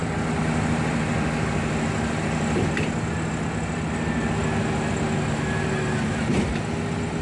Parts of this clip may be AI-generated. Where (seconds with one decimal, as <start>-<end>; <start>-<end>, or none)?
none